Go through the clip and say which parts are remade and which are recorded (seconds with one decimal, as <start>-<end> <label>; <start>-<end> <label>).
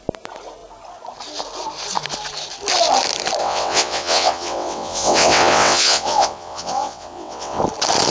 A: 0.0-3.4 recorded; 3.4-7.6 remade; 7.6-8.1 recorded